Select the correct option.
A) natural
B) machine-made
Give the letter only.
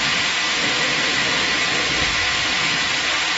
A